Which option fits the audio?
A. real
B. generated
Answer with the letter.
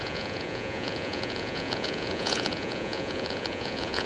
B